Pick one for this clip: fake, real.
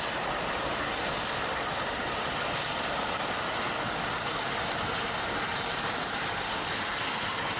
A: real